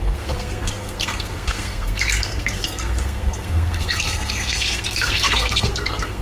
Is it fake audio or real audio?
fake